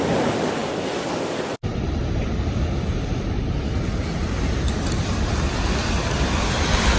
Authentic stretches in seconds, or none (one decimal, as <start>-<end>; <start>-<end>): 0.0-7.0